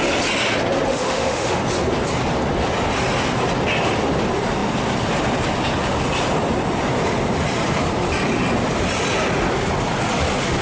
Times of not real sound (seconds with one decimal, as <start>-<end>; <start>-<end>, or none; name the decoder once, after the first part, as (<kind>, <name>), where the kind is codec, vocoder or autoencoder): 0.9-1.6 (autoencoder, DAC-VAE)